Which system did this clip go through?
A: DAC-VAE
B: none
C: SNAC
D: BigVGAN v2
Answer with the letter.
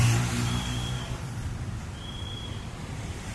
D